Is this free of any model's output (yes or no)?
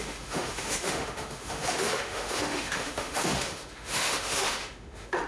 no